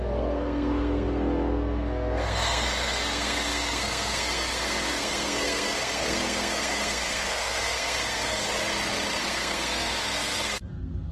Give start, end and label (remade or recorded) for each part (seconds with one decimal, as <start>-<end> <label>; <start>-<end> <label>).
0.0-8.5 remade; 8.5-9.2 recorded; 9.2-11.1 remade